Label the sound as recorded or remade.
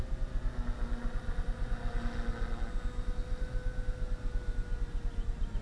recorded